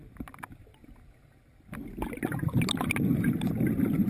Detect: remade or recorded recorded